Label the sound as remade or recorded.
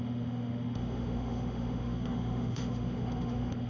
remade